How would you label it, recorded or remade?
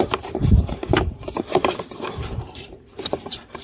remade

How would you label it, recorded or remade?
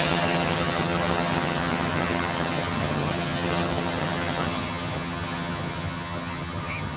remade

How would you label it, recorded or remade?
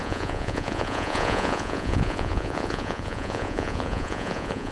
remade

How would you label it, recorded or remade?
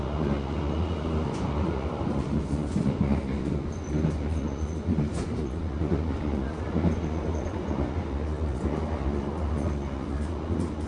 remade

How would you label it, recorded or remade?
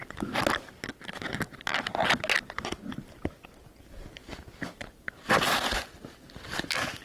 recorded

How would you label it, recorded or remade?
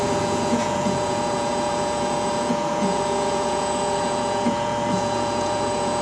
remade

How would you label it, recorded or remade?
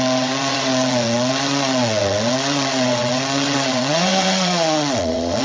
remade